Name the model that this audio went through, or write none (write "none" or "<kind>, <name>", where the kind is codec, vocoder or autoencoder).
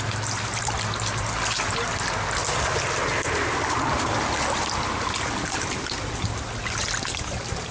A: none